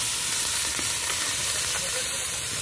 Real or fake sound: real